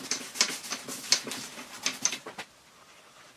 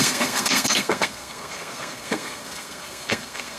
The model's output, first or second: second